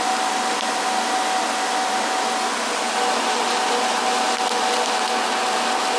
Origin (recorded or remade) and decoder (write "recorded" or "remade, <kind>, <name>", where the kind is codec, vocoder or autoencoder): recorded